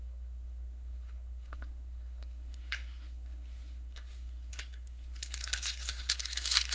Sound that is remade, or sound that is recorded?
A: remade